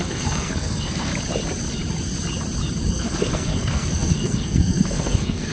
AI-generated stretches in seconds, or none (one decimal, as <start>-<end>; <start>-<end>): 0.0-1.1; 2.9-5.5